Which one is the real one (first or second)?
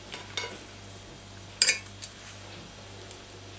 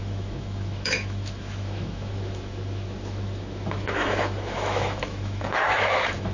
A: first